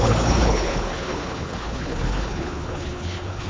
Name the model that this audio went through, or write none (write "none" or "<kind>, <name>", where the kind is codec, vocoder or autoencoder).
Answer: codec, HILCodec